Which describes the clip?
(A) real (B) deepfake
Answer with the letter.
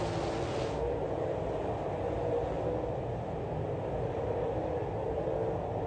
A